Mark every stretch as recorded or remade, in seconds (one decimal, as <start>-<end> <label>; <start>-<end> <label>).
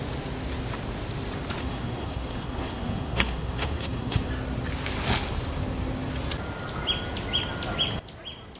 0.0-1.6 recorded; 1.6-4.3 remade; 4.3-8.6 recorded